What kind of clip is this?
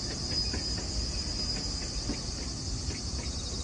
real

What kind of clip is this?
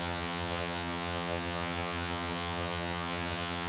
fake